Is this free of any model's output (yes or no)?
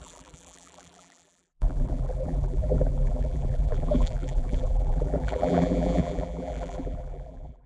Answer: no